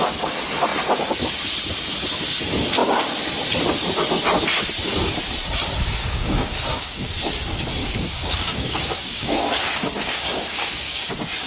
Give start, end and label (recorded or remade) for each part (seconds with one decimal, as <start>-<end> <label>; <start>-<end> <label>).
0.0-6.0 recorded; 6.0-7.1 remade; 7.1-7.8 recorded; 7.8-11.1 remade; 11.1-11.5 recorded